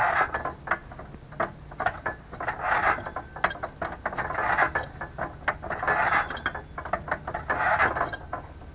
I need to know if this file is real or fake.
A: real